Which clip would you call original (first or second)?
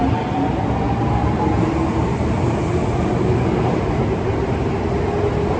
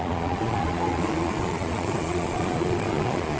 first